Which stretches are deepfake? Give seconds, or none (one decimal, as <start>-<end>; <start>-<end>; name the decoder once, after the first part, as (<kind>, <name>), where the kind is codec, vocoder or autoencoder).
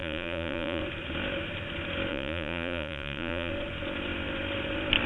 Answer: 0.0-0.8 (vocoder, Vocos); 2.1-3.5